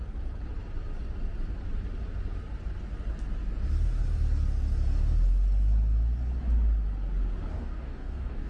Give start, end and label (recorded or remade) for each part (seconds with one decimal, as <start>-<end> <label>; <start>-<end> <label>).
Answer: 0.0-7.5 recorded; 7.5-8.5 remade